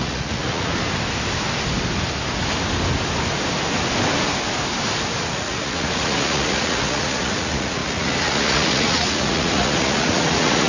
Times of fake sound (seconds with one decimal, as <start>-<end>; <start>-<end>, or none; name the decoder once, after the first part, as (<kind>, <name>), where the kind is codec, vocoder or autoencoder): 0.0-0.8 (vocoder, Vocos); 5.2-10.7